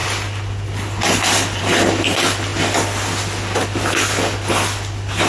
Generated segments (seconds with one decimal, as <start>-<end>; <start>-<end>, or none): none